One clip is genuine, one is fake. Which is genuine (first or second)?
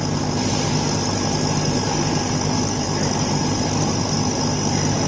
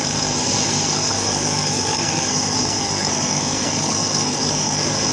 first